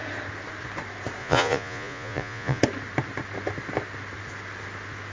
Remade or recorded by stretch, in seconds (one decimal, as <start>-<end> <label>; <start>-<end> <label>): 0.0-1.2 recorded; 1.2-2.6 remade; 2.6-5.1 recorded